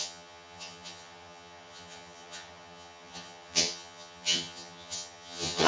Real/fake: fake